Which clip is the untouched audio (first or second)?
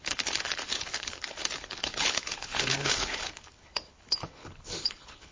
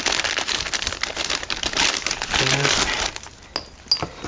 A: second